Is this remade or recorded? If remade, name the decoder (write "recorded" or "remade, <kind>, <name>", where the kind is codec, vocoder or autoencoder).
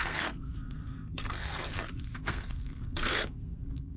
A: remade, codec, SNAC